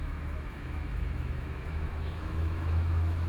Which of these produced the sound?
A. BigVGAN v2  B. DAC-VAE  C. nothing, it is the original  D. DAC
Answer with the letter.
B